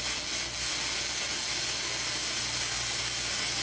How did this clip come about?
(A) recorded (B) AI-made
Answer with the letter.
A